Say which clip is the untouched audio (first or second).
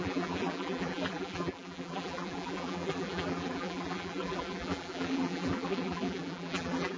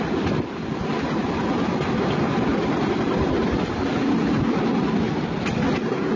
second